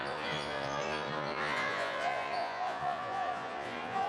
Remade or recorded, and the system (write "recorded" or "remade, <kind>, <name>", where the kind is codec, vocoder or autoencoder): remade, vocoder, Vocos